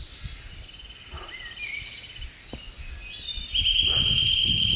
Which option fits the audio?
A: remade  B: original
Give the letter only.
B